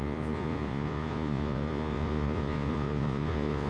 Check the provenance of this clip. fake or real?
fake